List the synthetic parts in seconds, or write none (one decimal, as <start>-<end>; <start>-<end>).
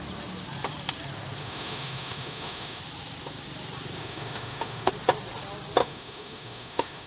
1.4-2.8; 4.0-4.9; 5.8-7.1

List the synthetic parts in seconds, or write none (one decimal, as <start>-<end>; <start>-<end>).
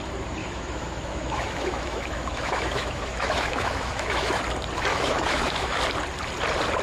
0.4-4.4; 4.9-5.8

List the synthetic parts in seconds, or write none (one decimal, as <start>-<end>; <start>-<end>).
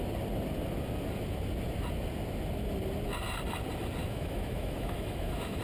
4.0-5.6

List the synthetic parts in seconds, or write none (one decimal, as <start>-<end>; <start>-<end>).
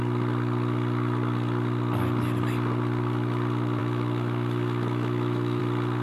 3.8-5.6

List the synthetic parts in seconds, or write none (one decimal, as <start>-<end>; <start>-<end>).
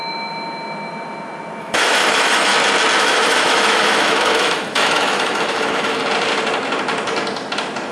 1.6-2.5; 3.0-6.0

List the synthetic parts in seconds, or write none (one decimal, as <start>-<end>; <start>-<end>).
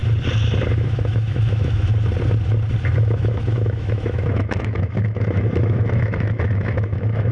0.7-1.9; 3.0-7.3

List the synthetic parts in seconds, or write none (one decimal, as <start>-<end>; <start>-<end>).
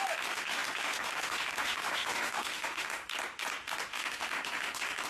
0.0-3.0; 3.9-5.1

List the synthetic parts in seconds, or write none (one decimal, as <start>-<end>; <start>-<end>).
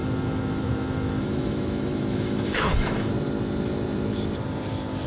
0.0-3.1